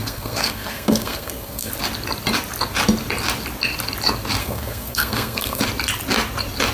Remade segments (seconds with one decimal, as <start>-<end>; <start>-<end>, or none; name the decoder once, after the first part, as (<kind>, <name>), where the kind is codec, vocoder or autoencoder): 0.0-1.7 (codec, SNAC); 4.4-5.6